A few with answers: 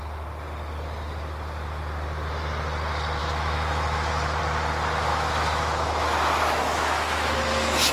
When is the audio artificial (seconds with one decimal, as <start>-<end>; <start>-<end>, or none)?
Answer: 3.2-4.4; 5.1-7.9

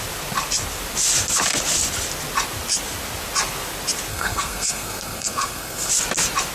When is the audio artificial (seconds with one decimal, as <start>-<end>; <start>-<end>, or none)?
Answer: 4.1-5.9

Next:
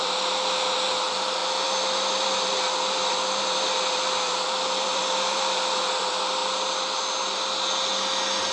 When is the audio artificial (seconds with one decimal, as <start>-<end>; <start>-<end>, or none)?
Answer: 0.0-6.4

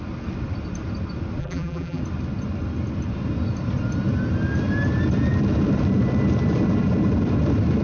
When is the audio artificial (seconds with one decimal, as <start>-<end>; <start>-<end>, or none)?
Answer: 1.4-2.0

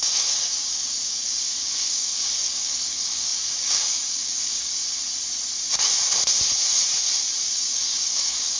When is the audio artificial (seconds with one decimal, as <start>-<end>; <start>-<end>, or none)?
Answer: 0.0-4.8; 7.5-8.6

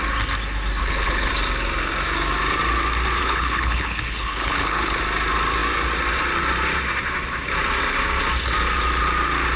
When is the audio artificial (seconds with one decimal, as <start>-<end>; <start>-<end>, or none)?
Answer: 0.8-1.3; 3.2-5.0